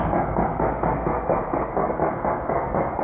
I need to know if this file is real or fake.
fake